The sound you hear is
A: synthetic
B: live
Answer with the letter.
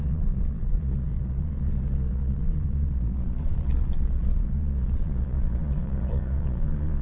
A